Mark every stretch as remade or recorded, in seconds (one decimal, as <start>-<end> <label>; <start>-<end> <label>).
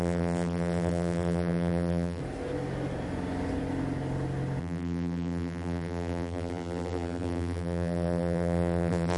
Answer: 0.0-2.2 remade; 2.2-4.6 recorded; 4.6-9.2 remade